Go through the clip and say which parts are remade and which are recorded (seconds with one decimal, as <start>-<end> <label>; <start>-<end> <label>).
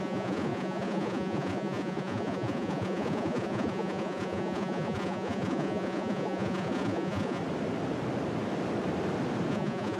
0.0-7.4 remade; 7.4-9.5 recorded; 9.5-10.0 remade